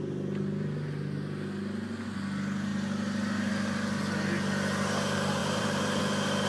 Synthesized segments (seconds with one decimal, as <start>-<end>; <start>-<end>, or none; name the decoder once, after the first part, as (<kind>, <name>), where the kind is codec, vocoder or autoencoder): 5.4-6.0 (vocoder, BigVGAN v2)